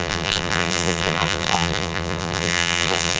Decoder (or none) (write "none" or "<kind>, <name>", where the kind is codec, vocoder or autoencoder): vocoder, BigVGAN v2